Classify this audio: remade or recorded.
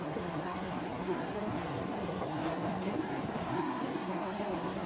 remade